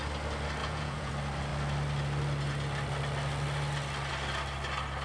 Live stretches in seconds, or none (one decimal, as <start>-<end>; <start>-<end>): 0.0-0.6; 1.1-5.0